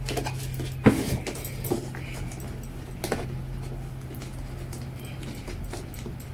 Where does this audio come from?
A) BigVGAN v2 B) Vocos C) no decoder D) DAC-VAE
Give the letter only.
C